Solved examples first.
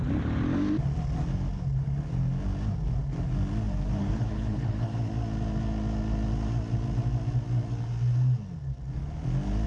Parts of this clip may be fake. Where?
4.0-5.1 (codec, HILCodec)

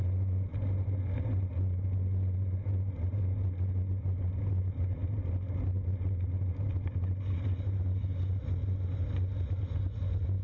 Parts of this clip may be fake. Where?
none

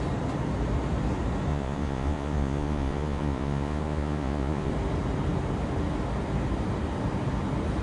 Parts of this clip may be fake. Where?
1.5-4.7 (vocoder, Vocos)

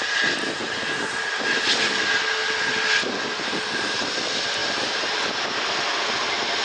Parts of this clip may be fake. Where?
none

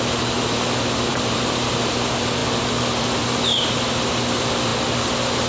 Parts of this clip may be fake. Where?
1.1-1.9 (vocoder, BigVGAN v2)

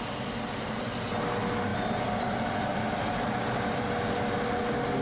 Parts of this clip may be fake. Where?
none

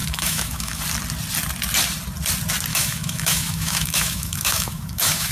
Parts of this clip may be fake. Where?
0.0-0.8 (autoencoder, DAC-VAE); 2.7-5.3

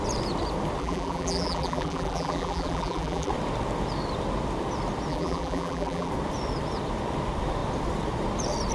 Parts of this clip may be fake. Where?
0.8-3.3 (vocoder, BigVGAN v2); 5.1-6.1